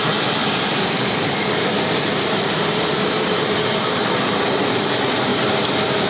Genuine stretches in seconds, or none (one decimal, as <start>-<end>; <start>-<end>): 0.0-0.4; 4.1-5.3